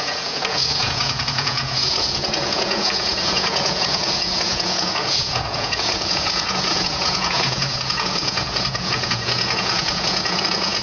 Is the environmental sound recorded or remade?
remade